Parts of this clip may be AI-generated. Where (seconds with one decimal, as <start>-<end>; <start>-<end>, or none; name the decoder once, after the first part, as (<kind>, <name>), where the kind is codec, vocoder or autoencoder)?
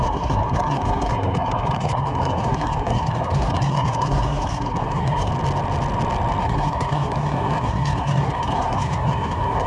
0.0-5.3 (codec, SNAC); 6.4-9.7